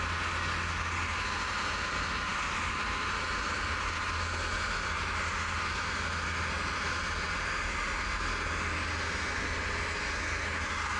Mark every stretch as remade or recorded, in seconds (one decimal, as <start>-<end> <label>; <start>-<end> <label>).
0.0-11.0 recorded